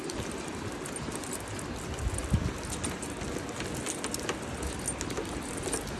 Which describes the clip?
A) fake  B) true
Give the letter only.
B